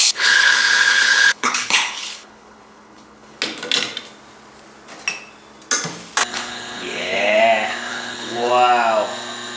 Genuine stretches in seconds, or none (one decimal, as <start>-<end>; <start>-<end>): 3.4-6.3; 7.4-7.9; 8.5-9.6

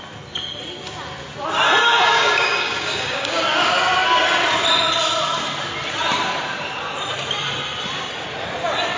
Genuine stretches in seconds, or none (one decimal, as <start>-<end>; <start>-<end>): 0.0-1.8; 3.8-9.0

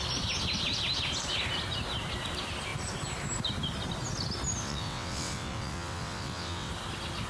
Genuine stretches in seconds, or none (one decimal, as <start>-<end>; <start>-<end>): 0.0-4.6; 6.7-7.3

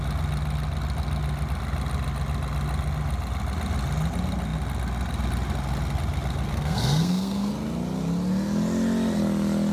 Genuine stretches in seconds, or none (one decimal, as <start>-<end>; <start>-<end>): 0.0-6.5; 7.5-9.7